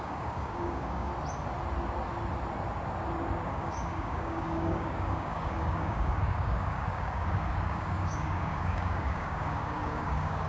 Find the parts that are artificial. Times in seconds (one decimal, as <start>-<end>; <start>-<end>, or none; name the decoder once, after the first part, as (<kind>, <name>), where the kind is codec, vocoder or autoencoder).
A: 0.0-1.1 (codec, DAC); 3.5-10.5

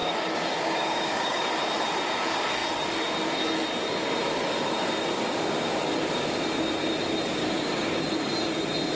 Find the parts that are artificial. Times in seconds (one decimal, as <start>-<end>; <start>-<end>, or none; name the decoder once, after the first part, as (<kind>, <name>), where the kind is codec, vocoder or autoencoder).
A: 0.0-1.5 (codec, DAC); 7.4-8.0

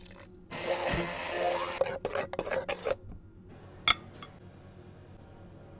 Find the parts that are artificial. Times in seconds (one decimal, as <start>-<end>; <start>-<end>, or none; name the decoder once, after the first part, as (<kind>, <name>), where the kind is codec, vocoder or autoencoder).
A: 2.8-3.5 (codec, DAC)

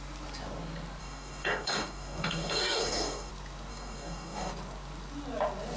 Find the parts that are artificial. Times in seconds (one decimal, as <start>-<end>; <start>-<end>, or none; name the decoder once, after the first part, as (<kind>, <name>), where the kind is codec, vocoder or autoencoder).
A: 1.0-3.3 (codec, DAC); 3.7-4.5

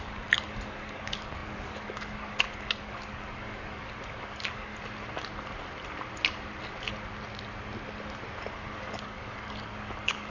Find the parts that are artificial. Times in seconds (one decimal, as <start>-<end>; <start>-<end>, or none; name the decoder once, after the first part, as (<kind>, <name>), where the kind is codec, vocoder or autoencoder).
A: 0.0-4.7 (codec, DAC); 8.7-10.3